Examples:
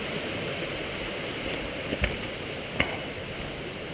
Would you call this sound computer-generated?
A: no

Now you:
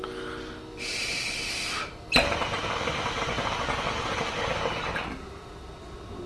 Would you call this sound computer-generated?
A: no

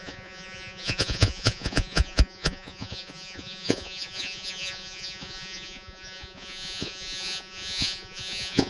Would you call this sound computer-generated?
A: yes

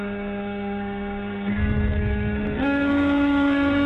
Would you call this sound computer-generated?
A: yes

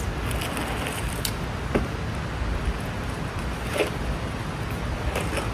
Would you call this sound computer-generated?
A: no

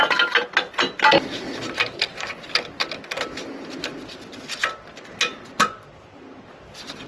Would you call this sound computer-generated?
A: no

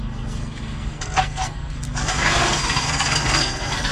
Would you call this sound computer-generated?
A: yes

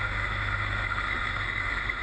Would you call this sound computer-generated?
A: yes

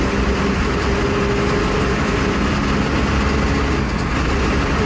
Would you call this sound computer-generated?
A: no